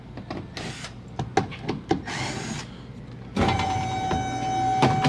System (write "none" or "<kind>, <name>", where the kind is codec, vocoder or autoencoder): none